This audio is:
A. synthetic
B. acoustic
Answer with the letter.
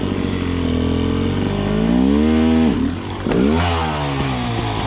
B